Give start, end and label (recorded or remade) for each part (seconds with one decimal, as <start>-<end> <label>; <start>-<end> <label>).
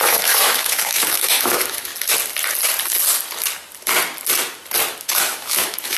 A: 0.0-1.9 remade; 1.9-5.0 recorded; 5.0-6.0 remade